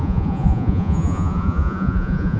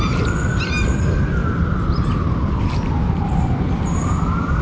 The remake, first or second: first